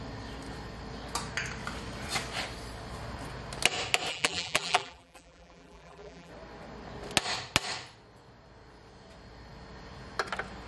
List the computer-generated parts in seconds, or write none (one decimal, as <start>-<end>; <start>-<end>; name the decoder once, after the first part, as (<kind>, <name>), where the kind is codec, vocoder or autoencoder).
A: 4.1-6.3 (vocoder, BigVGAN v2)